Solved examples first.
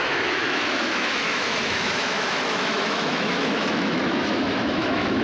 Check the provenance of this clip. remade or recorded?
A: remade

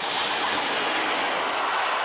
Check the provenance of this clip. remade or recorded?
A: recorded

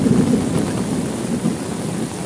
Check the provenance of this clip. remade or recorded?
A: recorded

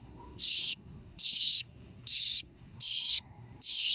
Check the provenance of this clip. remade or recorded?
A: remade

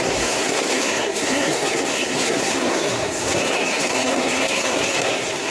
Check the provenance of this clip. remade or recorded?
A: remade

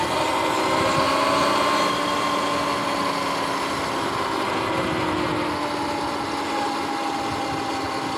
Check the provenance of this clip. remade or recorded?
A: recorded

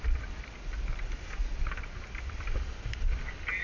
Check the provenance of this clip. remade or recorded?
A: recorded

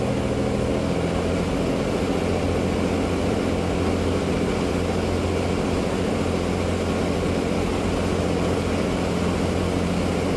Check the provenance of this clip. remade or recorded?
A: recorded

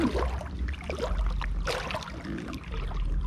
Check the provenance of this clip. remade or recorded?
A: recorded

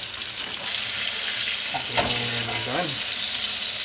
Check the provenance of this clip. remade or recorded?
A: recorded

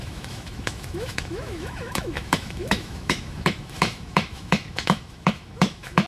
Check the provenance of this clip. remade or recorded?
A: remade